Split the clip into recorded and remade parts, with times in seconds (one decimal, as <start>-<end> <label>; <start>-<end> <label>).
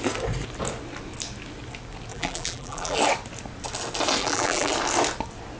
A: 0.0-2.1 recorded; 2.1-3.0 remade; 3.0-4.2 recorded; 4.2-4.7 remade; 4.7-5.6 recorded